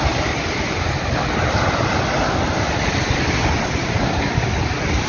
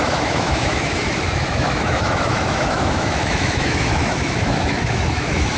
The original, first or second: first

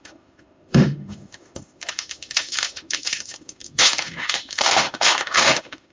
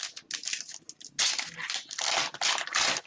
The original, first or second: second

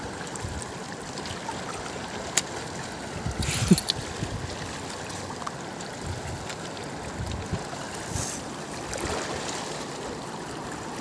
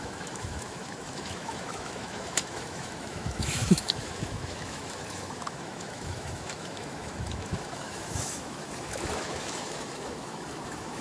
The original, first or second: first